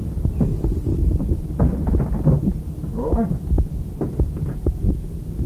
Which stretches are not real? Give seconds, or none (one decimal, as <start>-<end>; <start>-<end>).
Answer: none